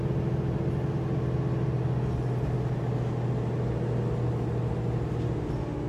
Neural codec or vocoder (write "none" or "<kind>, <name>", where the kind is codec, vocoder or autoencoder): none